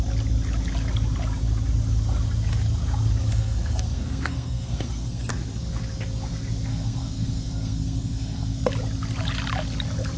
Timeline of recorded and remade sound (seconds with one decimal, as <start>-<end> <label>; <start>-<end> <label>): 0.0-3.3 recorded; 3.3-5.3 remade; 5.3-6.7 recorded; 6.7-8.7 remade; 8.7-10.2 recorded